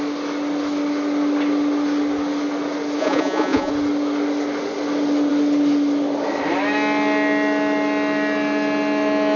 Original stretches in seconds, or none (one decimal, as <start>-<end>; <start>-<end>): 0.0-3.0; 3.7-9.4